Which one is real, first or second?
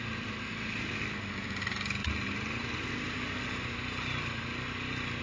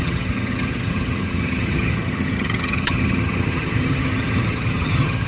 first